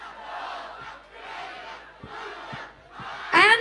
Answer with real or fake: fake